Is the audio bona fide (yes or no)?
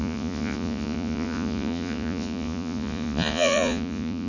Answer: no